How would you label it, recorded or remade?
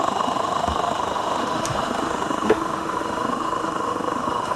remade